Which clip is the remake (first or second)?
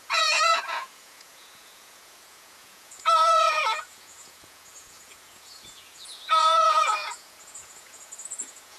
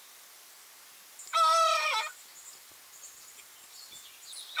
first